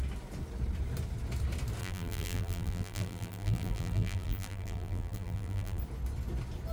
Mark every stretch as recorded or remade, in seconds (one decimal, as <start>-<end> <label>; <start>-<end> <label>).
0.0-1.8 recorded; 1.8-5.8 remade; 5.8-6.7 recorded